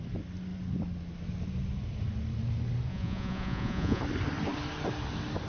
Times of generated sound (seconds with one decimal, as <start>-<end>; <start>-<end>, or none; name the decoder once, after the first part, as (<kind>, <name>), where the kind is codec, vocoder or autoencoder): 2.9-4.0 (vocoder, Vocos)